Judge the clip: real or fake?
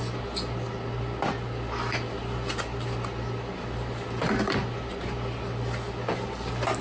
real